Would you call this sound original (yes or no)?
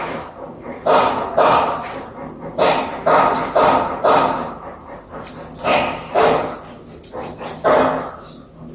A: yes